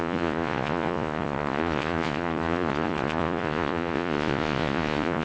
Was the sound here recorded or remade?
remade